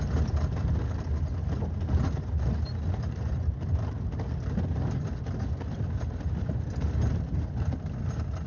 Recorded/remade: recorded